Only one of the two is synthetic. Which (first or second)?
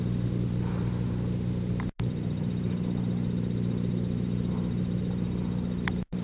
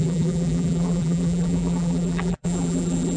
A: second